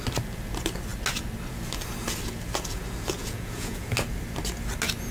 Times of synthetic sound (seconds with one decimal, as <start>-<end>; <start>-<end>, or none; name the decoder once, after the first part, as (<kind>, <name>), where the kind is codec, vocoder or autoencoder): 3.2-3.9 (vocoder, Vocos)